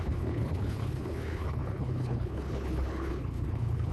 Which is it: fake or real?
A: fake